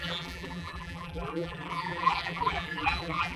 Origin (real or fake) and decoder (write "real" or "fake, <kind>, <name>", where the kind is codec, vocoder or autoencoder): fake, vocoder, BigVGAN v2